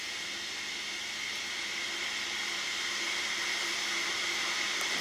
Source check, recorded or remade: recorded